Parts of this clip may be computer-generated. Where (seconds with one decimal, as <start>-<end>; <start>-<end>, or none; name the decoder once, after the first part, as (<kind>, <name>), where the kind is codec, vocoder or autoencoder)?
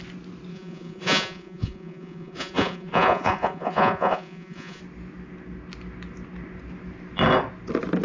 0.5-4.8 (vocoder, Vocos)